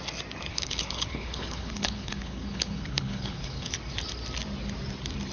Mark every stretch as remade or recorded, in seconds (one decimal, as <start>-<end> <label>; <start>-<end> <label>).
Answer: 0.0-0.5 recorded; 0.5-3.7 remade; 3.7-5.3 recorded